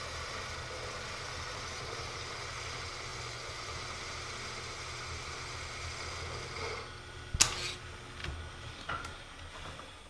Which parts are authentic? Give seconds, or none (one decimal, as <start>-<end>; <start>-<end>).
0.0-3.1; 3.8-10.1